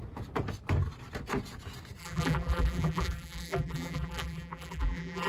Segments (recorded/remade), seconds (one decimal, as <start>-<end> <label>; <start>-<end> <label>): 0.0-2.0 recorded; 2.0-5.3 remade